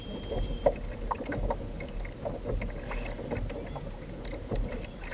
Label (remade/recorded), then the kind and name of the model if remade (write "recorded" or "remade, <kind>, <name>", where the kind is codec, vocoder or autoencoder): recorded